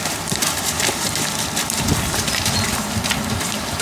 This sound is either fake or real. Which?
fake